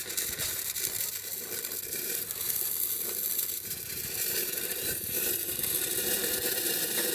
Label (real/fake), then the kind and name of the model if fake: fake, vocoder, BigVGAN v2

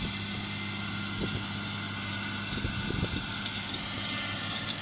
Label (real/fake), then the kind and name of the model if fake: real